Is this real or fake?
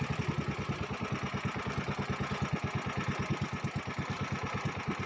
real